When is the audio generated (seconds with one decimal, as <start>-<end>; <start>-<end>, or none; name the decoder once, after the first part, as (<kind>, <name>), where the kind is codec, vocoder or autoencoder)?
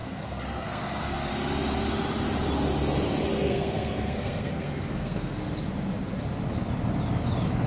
0.0-1.3 (codec, SNAC); 3.3-5.5